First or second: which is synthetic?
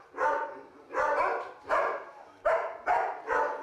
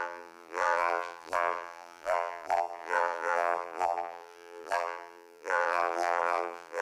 second